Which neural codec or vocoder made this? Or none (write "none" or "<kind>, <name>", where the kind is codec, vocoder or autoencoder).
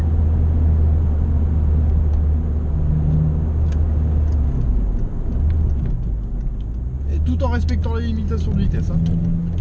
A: none